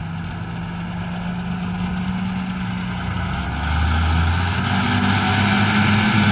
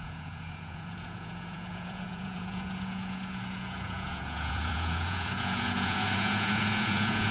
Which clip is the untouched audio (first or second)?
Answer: first